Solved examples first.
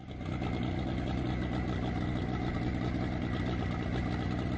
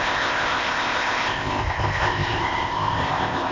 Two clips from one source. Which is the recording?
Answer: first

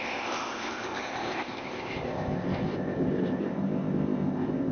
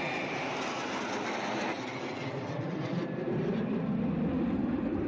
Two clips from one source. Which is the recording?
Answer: second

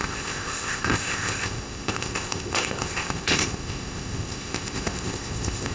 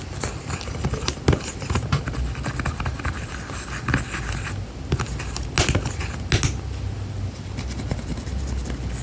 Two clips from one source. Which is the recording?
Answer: second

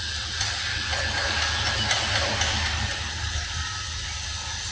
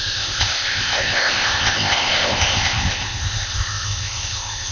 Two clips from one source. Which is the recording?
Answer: first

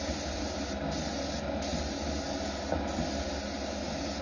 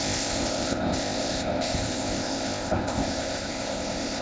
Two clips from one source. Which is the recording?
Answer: first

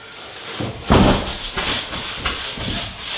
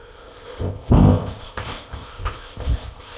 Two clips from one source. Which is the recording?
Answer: first